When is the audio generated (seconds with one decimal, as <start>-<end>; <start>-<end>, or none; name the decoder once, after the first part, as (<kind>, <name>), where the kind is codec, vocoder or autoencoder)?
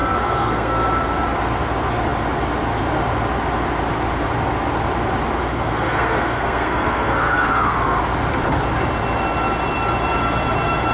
0.0-0.9 (codec, SNAC); 5.5-8.0